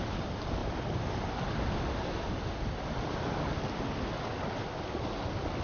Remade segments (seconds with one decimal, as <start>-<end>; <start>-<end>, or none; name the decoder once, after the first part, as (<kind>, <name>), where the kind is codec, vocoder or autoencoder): none